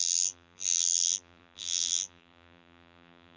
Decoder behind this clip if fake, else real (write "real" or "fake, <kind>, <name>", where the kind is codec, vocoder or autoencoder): fake, vocoder, BigVGAN v2